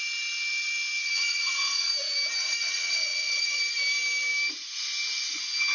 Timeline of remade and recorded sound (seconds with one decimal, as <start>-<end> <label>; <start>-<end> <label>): 0.0-1.0 recorded; 1.0-1.9 remade; 1.9-2.4 recorded; 2.4-3.6 remade; 3.6-5.7 recorded